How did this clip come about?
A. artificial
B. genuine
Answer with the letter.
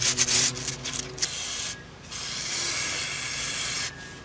B